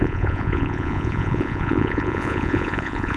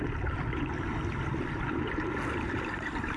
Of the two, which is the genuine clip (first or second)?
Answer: second